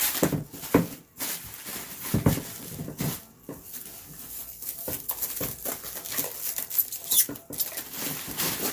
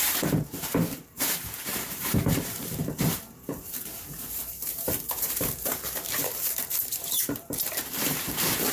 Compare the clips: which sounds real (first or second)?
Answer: first